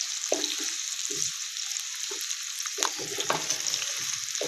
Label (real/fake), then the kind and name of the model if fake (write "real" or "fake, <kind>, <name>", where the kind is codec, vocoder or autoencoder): real